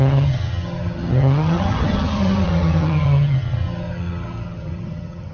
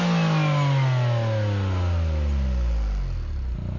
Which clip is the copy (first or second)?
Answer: first